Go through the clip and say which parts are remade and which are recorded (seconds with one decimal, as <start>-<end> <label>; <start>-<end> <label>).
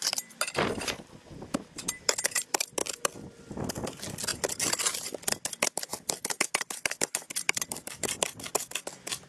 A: 0.0-9.3 recorded